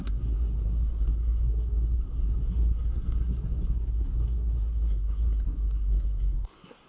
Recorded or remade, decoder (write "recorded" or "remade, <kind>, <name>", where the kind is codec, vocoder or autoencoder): remade, codec, SNAC